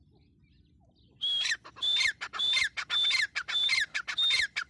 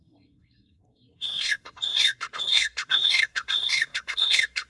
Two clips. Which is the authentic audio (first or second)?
first